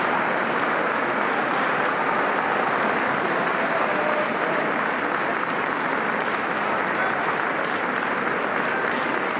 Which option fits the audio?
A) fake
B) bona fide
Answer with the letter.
B